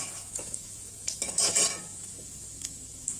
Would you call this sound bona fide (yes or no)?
no